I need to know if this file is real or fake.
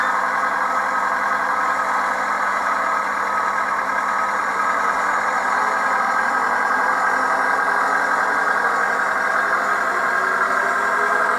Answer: real